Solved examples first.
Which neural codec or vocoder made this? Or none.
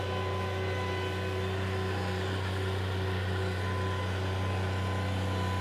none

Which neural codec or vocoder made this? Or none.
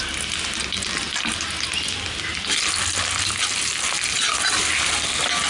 none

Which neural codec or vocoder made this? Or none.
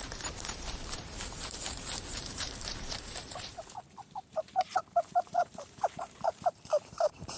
vocoder, BigVGAN v2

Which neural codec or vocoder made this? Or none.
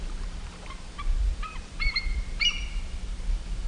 vocoder, BigVGAN v2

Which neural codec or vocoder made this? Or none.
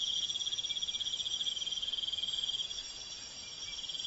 none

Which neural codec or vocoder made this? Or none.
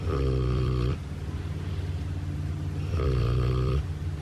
vocoder, BigVGAN v2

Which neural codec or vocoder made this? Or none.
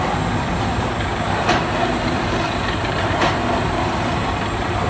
vocoder, BigVGAN v2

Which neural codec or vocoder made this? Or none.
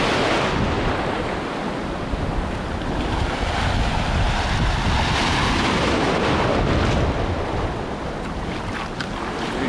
none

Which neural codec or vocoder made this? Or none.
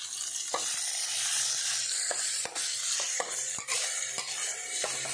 none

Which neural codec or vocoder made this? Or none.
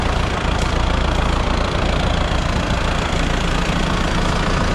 vocoder, BigVGAN v2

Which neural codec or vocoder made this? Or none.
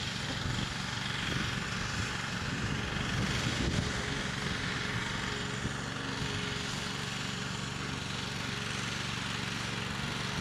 none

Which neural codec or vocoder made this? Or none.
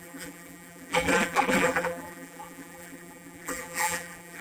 vocoder, BigVGAN v2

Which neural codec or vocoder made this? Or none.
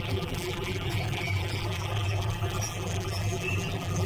vocoder, BigVGAN v2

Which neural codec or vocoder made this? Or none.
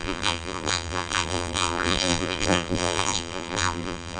vocoder, BigVGAN v2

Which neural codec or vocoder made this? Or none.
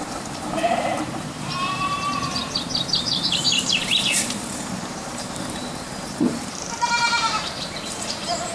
vocoder, BigVGAN v2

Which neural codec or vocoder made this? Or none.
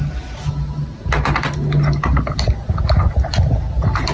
none